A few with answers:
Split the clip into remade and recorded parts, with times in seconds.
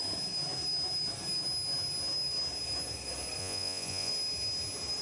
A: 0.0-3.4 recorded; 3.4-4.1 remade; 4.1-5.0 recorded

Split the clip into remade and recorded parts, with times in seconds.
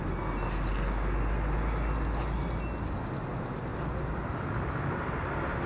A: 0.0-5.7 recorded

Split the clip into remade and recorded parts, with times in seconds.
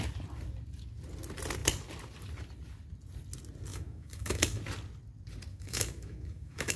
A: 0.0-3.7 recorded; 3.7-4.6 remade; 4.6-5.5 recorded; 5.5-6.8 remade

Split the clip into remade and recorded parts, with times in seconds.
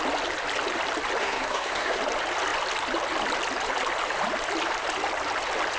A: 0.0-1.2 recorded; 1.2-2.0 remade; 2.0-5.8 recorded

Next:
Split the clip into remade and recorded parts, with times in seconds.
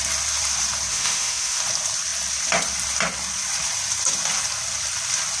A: 0.0-0.9 recorded; 0.9-1.6 remade; 1.6-5.4 recorded